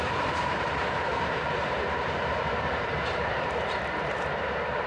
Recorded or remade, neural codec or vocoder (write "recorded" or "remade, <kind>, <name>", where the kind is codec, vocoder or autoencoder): remade, vocoder, BigVGAN v2